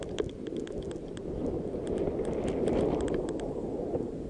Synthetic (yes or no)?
no